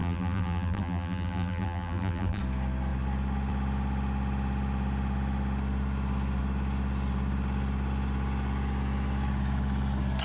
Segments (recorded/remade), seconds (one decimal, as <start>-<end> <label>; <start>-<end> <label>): 0.0-2.4 remade; 2.4-10.2 recorded